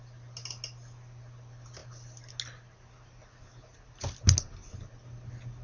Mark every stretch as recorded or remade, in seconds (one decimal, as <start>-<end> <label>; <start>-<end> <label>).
0.0-5.6 recorded